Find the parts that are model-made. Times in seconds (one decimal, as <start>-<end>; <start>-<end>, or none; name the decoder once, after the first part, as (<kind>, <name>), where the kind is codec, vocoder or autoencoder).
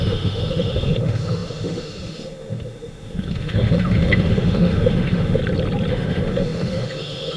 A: 0.0-5.4 (autoencoder, DAC-VAE); 5.9-7.4